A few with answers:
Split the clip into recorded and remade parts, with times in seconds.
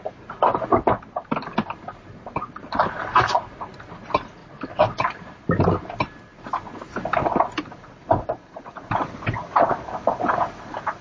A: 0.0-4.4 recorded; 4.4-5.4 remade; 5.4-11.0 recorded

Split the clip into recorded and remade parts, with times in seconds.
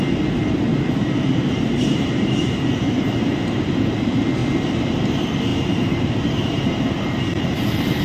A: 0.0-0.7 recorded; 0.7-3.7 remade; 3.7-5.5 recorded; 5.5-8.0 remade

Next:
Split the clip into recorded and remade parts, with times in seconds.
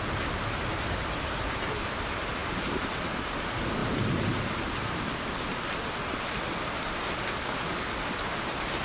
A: 0.0-0.7 recorded; 0.7-1.6 remade; 1.6-2.4 recorded; 2.4-3.0 remade; 3.0-3.8 recorded; 3.8-5.1 remade; 5.1-8.8 recorded